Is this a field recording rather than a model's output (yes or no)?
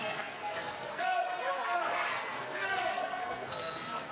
no